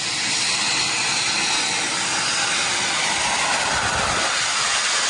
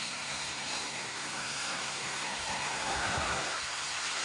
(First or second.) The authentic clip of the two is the first